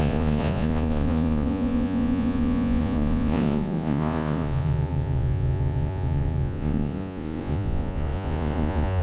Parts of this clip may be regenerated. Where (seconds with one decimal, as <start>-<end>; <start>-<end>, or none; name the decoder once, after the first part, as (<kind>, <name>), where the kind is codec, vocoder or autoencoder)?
0.0-9.0 (vocoder, Vocos)